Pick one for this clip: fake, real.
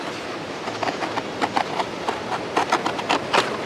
real